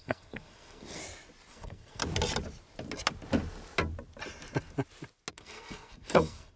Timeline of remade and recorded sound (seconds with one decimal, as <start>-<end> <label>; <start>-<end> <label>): 0.0-1.0 remade; 1.0-1.5 recorded; 1.5-2.0 remade; 2.0-5.3 recorded; 5.3-6.6 remade

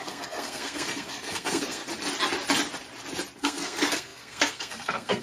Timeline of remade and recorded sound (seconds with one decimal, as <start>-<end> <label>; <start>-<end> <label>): 0.0-1.8 remade; 1.8-3.4 recorded; 3.4-5.2 remade

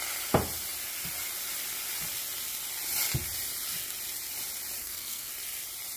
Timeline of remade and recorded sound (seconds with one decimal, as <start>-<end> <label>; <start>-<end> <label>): 0.0-4.8 recorded; 4.8-5.3 remade; 5.3-6.0 recorded

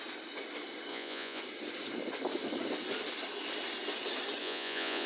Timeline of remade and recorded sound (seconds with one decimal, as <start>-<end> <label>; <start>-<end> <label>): 0.0-0.9 recorded; 0.9-1.4 remade; 1.4-4.4 recorded; 4.4-5.1 remade

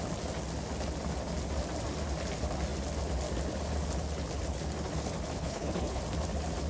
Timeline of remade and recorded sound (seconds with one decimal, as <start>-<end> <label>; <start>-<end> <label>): 0.0-5.4 recorded; 5.4-6.0 remade; 6.0-6.7 recorded

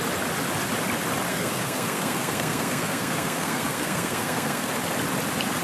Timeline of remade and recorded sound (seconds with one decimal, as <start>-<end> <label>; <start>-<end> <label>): 0.0-1.3 recorded; 1.3-4.7 remade; 4.7-5.6 recorded